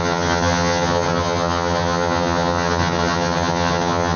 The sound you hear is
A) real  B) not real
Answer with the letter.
B